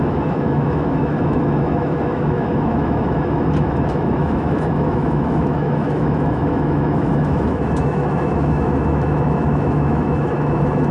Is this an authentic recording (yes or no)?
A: no